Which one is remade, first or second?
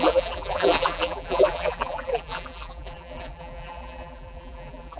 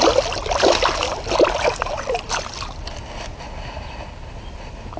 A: first